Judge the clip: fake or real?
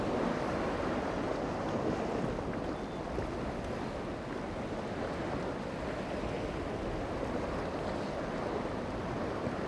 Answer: real